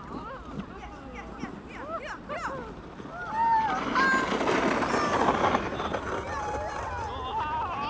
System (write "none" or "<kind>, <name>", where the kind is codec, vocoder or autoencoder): none